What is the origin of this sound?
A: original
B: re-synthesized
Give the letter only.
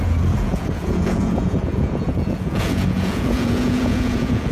B